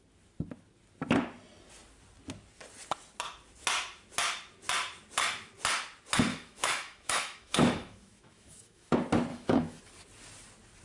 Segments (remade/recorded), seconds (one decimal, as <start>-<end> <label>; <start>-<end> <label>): 0.0-6.3 recorded; 6.3-8.9 remade; 8.9-9.3 recorded; 9.3-9.8 remade; 9.8-10.8 recorded